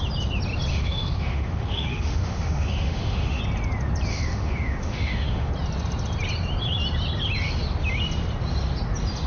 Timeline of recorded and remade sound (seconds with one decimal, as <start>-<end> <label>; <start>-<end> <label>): 0.0-0.7 recorded; 0.7-3.4 remade; 3.4-4.1 recorded; 4.1-5.5 remade; 5.5-9.3 recorded